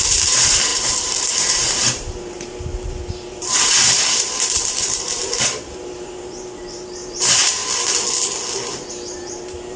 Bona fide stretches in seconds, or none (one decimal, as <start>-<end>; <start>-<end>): 7.6-8.9